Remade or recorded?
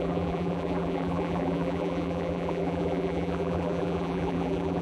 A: remade